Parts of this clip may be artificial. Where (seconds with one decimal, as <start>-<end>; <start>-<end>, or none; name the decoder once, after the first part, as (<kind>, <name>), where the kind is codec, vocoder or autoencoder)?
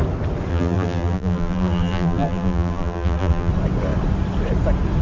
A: 0.5-3.5 (vocoder, BigVGAN v2)